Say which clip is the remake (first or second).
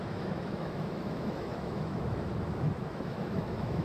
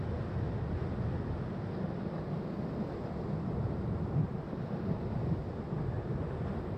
first